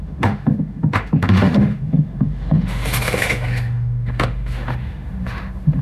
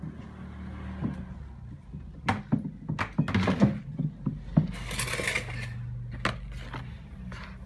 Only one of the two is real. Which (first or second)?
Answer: second